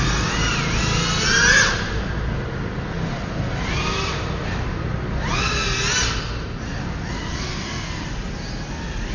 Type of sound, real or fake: real